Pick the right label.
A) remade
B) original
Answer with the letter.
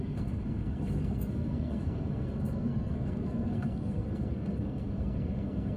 A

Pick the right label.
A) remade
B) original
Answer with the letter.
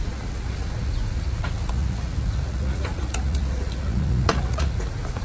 A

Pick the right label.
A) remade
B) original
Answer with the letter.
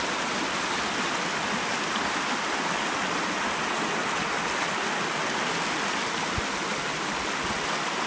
B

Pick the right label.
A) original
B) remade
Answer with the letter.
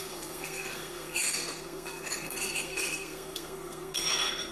B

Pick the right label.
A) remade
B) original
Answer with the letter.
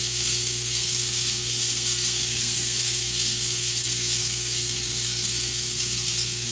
A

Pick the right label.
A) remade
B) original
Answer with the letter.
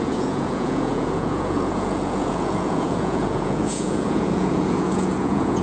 A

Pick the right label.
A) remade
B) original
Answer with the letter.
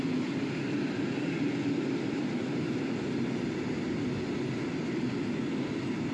B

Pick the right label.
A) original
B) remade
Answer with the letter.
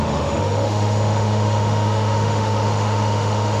B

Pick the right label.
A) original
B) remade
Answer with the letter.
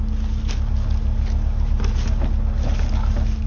A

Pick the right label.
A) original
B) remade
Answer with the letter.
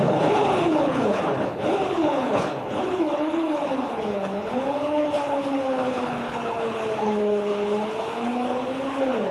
B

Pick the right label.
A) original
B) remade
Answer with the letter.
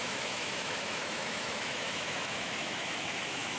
B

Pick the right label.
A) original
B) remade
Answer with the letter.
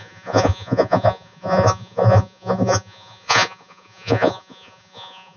B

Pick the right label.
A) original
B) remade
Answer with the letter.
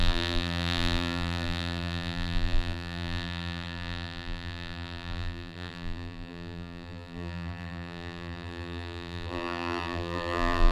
B